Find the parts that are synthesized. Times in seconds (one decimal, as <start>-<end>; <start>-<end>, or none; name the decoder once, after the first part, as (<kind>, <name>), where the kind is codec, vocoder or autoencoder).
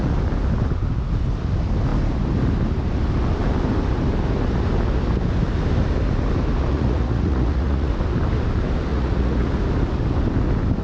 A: 6.7-7.9 (vocoder, Vocos); 8.9-9.5